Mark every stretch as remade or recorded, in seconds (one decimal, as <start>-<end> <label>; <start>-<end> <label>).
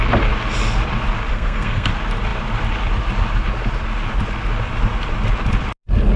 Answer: 0.0-1.3 recorded; 1.3-1.9 remade; 1.9-6.2 recorded